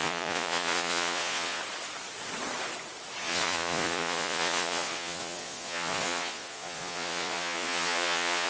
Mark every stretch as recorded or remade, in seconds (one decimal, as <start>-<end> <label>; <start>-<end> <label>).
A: 0.0-1.6 remade; 1.6-3.2 recorded; 3.2-8.5 remade